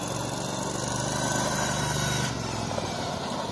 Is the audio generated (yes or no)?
no